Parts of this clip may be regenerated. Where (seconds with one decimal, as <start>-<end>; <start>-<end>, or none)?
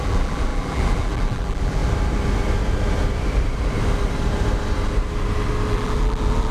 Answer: 0.0-1.8; 5.7-6.5